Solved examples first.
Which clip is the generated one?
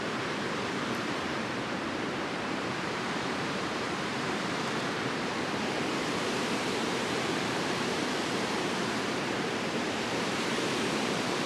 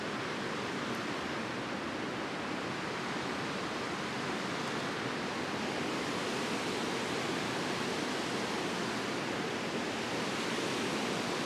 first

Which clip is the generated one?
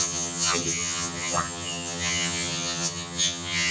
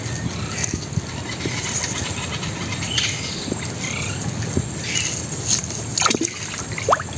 first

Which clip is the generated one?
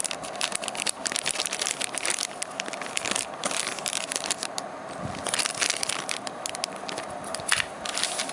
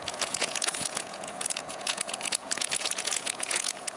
second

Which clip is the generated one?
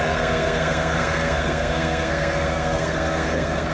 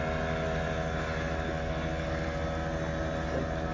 first